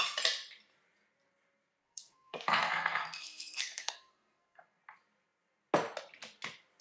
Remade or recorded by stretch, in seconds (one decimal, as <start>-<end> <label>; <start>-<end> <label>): 0.0-1.8 recorded; 1.8-4.8 remade; 4.8-6.8 recorded